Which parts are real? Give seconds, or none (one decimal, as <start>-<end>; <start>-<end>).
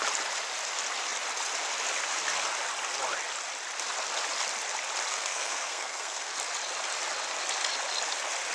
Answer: 0.0-5.1; 6.3-8.5